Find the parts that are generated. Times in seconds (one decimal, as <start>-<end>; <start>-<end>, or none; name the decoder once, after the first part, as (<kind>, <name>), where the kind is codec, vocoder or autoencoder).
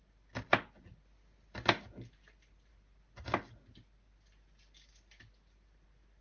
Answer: none